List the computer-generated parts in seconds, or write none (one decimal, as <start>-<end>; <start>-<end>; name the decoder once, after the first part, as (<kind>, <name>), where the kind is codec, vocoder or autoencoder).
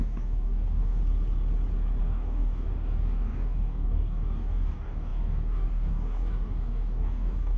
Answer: 0.0-1.0 (codec, DAC); 2.0-7.6